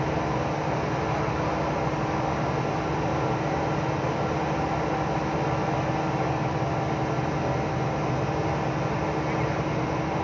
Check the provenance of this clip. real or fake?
real